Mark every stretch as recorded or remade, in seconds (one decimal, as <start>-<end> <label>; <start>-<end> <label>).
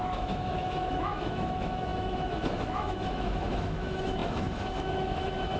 0.0-5.6 remade